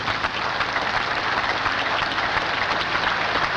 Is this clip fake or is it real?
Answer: real